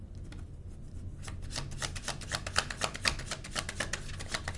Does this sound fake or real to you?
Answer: real